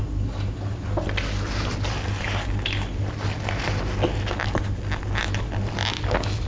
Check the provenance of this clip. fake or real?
real